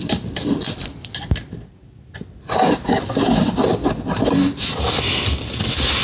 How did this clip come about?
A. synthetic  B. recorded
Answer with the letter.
B